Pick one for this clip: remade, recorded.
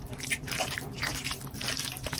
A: recorded